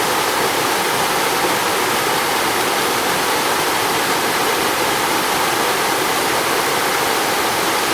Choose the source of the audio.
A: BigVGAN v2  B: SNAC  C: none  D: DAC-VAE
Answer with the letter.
C